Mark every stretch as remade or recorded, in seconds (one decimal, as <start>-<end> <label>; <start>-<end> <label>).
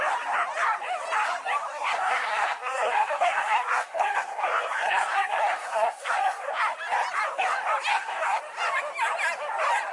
0.0-1.7 recorded; 1.7-6.5 remade; 6.5-7.9 recorded; 7.9-8.4 remade; 8.4-9.9 recorded